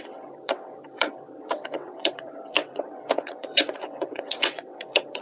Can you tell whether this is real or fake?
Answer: fake